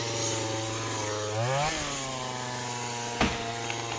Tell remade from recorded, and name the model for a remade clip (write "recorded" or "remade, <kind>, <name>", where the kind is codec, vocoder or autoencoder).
recorded